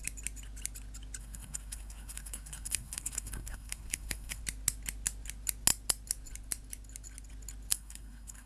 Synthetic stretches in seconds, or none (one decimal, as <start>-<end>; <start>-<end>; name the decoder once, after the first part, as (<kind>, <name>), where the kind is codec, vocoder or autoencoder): 1.2-4.4 (codec, SNAC); 7.7-8.5